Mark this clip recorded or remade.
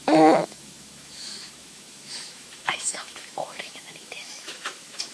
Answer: remade